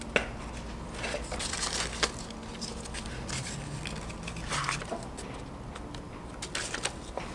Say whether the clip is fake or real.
real